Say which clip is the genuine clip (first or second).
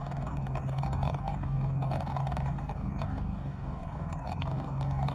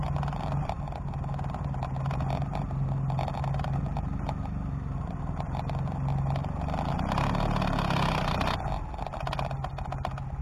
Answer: second